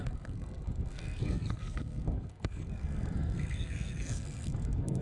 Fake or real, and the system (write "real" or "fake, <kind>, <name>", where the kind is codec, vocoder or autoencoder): fake, codec, SNAC